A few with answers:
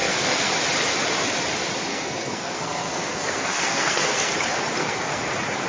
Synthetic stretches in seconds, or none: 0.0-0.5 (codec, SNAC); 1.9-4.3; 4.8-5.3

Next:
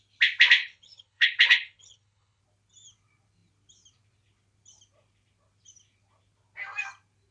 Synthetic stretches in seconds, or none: 0.6-2.4 (codec, HILCodec)